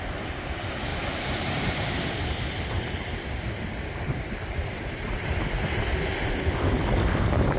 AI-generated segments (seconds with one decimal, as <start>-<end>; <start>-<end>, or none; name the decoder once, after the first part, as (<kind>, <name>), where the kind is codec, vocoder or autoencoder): 0.9-5.1 (vocoder, BigVGAN v2)